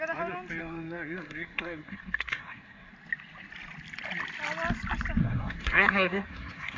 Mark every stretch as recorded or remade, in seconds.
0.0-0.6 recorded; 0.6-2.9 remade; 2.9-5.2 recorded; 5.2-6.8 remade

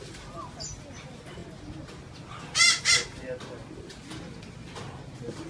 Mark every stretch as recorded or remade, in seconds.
0.0-5.5 recorded

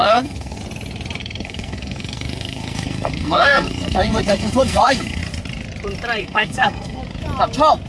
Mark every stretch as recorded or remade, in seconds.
0.0-0.6 remade; 0.6-1.2 recorded; 1.2-5.2 remade; 5.2-6.2 recorded; 6.2-7.0 remade; 7.0-7.9 recorded

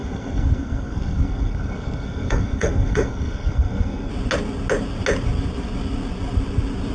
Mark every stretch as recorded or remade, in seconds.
0.0-4.1 remade; 4.1-6.9 recorded

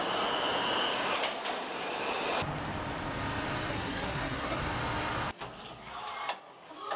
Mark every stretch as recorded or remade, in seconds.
0.0-3.7 recorded; 3.7-4.6 remade; 4.6-7.0 recorded

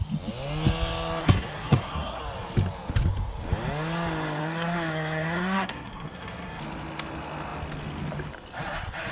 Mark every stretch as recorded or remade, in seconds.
0.0-1.2 recorded; 1.2-2.2 remade; 2.2-4.4 recorded; 4.4-6.6 remade; 6.6-9.1 recorded

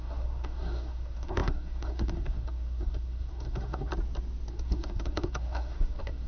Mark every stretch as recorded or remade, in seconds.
0.0-3.9 remade; 3.9-4.5 recorded; 4.5-6.3 remade

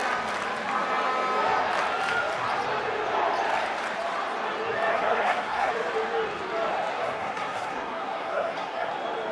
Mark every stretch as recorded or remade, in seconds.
0.0-4.9 recorded; 4.9-5.7 remade; 5.7-6.9 recorded; 6.9-8.9 remade; 8.9-9.3 recorded